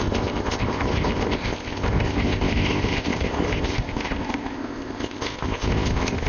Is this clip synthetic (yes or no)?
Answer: yes